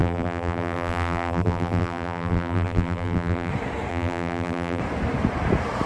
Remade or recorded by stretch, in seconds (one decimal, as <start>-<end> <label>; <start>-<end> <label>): 0.0-3.5 remade; 3.5-3.9 recorded; 3.9-4.8 remade; 4.8-5.9 recorded